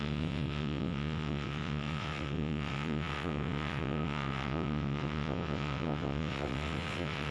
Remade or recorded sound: remade